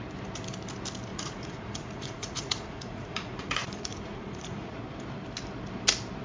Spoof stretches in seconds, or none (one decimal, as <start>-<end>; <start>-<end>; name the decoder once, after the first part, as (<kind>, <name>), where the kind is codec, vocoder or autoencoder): 1.1-4.8 (vocoder, Vocos)